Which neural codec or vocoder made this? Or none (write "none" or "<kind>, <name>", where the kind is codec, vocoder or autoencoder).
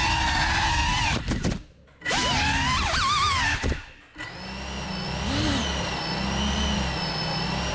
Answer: none